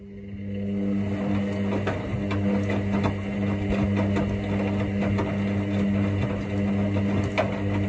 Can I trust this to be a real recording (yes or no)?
yes